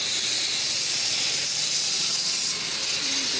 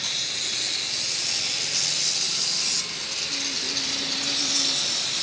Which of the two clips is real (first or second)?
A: second